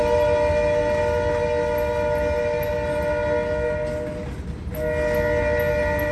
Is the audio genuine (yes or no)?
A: yes